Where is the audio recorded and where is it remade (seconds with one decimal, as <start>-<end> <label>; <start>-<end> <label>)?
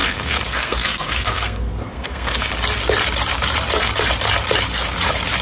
0.0-2.5 remade; 2.5-5.4 recorded